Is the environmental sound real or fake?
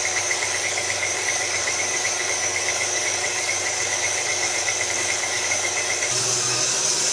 fake